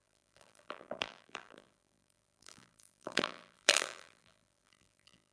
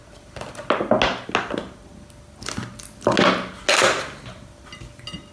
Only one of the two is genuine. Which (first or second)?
second